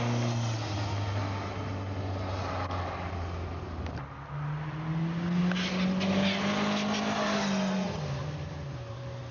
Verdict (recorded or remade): recorded